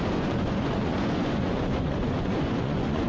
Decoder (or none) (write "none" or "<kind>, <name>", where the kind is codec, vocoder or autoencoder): vocoder, Vocos